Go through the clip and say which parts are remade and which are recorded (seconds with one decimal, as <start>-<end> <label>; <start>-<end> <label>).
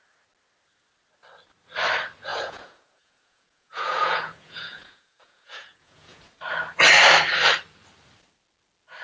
0.0-2.3 recorded; 2.3-6.2 remade; 6.2-9.0 recorded